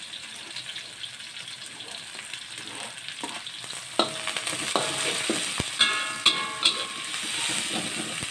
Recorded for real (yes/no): yes